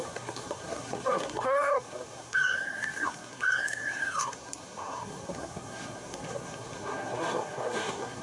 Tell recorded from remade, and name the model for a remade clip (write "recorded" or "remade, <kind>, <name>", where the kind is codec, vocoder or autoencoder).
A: remade, codec, SNAC